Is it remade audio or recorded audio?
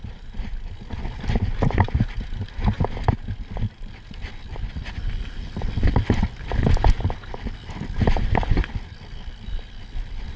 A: remade